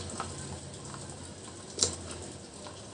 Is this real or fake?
real